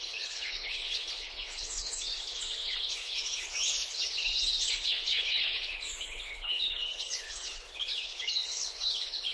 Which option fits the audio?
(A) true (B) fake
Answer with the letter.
B